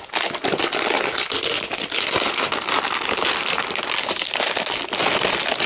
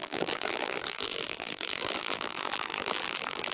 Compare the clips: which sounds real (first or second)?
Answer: first